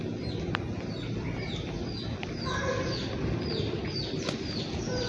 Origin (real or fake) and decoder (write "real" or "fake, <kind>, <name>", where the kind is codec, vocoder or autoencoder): real